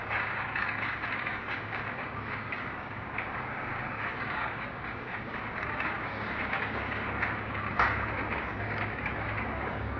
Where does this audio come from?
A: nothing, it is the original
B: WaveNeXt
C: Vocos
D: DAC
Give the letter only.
D